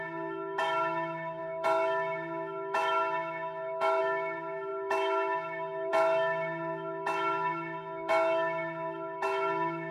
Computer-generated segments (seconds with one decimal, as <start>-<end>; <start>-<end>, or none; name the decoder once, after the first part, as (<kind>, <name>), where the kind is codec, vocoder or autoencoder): 0.0-9.9 (autoencoder, DAC-VAE)